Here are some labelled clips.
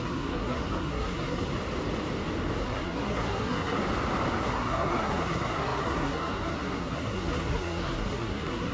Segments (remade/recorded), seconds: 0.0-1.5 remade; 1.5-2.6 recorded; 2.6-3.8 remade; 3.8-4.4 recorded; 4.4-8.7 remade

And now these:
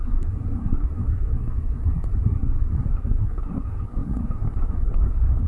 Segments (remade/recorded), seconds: 0.0-5.5 remade